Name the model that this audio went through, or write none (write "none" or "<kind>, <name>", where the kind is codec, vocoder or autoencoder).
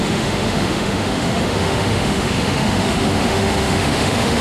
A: autoencoder, DAC-VAE